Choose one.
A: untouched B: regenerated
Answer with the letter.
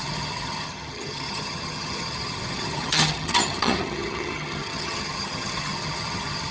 B